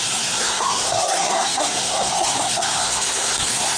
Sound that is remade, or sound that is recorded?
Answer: remade